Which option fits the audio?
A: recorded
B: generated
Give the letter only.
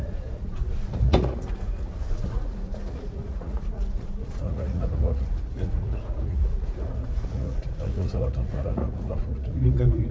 B